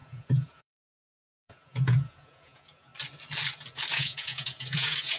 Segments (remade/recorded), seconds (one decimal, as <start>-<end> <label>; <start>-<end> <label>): 0.0-2.9 remade; 2.9-3.9 recorded; 3.9-5.2 remade